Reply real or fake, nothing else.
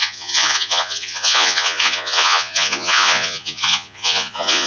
fake